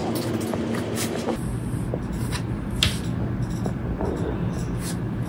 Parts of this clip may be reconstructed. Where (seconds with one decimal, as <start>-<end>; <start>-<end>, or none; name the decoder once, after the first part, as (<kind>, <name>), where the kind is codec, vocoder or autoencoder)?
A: none